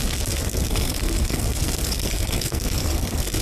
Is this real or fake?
fake